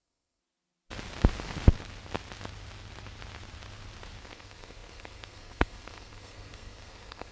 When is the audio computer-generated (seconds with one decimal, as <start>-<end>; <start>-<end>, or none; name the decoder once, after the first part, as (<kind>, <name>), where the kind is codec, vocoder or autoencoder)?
0.0-0.4 (codec, SNAC); 4.2-7.3